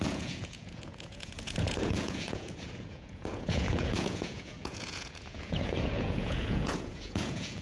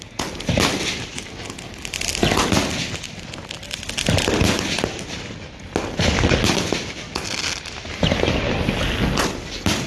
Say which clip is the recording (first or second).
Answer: second